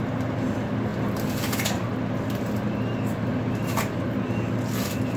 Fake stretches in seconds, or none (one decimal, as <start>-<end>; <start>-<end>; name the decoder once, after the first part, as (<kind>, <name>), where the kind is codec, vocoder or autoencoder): 0.9-4.0 (vocoder, BigVGAN v2)